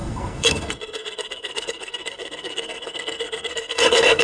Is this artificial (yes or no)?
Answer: yes